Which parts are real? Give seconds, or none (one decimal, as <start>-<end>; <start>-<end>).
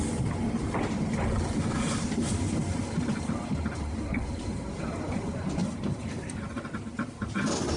0.0-5.6; 6.6-7.8